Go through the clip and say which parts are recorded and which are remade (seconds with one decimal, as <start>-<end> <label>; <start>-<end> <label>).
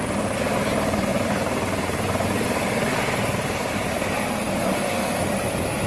0.0-1.1 recorded; 1.1-4.6 remade; 4.6-5.9 recorded